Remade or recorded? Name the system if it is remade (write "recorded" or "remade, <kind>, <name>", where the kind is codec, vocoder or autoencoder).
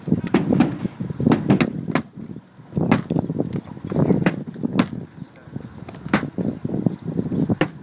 recorded